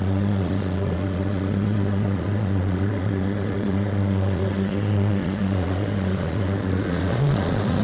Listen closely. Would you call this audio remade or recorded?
remade